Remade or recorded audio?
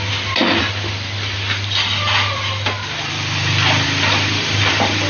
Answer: remade